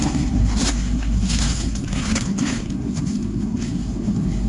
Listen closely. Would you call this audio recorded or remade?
remade